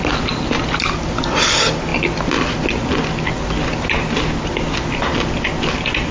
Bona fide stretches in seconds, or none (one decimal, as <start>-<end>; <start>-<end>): 0.0-6.1